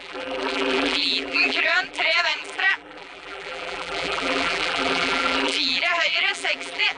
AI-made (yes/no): yes